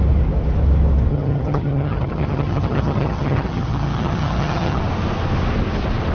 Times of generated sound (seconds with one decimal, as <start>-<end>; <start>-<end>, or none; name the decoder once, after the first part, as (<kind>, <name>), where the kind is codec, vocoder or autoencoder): 1.1-4.8 (vocoder, HiFi-GAN)